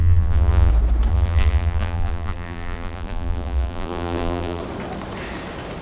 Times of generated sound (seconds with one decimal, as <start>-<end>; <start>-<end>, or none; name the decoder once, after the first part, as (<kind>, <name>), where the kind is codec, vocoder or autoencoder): 0.0-0.7 (vocoder, BigVGAN v2); 1.1-4.6